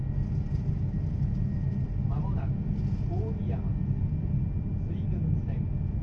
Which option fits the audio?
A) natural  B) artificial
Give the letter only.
A